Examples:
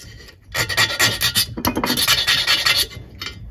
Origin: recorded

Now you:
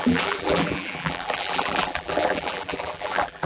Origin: remade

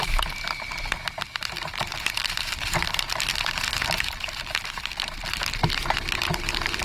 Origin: remade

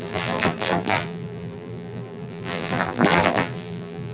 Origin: remade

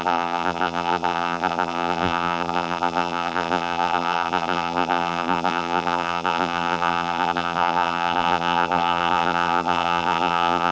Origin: remade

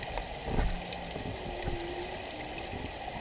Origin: recorded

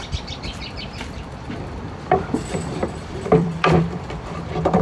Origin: remade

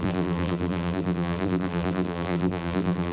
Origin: remade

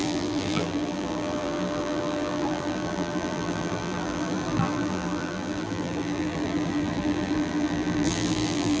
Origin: remade